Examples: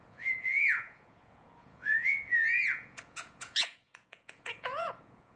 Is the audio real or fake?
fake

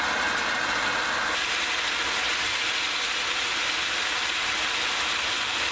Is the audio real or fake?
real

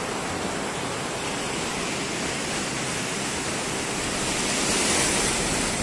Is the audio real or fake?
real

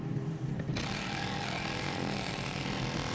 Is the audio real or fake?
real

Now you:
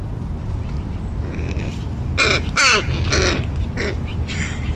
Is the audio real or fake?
real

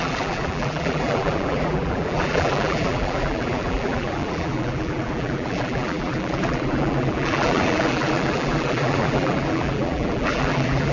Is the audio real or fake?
fake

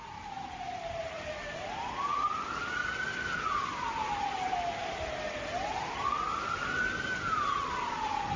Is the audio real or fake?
fake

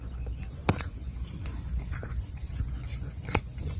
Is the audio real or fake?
fake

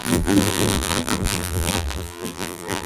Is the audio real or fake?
fake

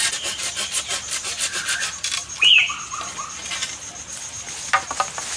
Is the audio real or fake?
real